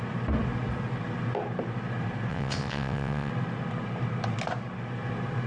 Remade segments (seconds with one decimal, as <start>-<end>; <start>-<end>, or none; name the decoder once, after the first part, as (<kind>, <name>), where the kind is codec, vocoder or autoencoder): 2.3-3.3 (vocoder, WaveNeXt)